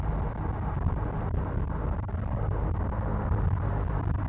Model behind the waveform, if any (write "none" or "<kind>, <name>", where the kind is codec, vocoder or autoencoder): none